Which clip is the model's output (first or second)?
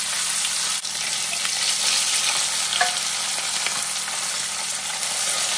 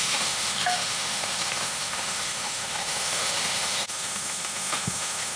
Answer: second